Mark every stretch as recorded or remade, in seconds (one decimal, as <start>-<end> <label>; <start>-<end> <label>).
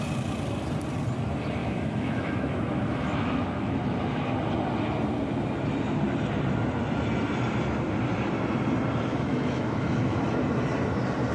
0.0-1.6 recorded; 1.6-4.3 remade; 4.3-9.1 recorded; 9.1-10.2 remade; 10.2-11.3 recorded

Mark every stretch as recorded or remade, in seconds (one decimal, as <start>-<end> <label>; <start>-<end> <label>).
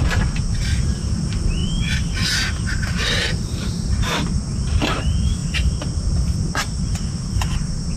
0.0-8.0 recorded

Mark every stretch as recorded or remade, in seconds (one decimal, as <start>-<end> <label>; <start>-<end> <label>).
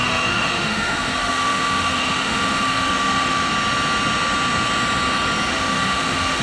0.0-3.5 remade; 3.5-5.5 recorded; 5.5-6.4 remade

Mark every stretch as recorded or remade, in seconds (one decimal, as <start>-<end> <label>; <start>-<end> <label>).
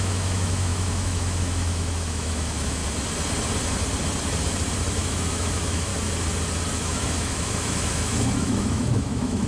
0.0-2.8 remade; 2.8-4.9 recorded; 4.9-5.9 remade; 5.9-6.7 recorded; 6.7-9.5 remade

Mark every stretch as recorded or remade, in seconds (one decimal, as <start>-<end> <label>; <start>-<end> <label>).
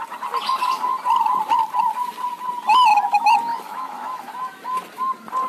0.0-3.5 recorded; 3.5-4.3 remade; 4.3-5.5 recorded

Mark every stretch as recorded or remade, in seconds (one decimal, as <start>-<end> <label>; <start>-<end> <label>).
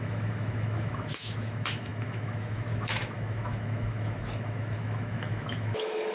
0.0-6.1 remade